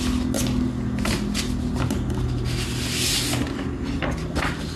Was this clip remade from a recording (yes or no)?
no